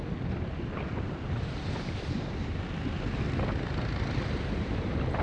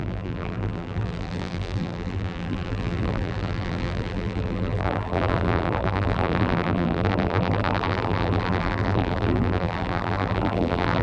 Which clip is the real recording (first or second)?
first